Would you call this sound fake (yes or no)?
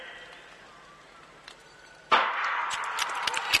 no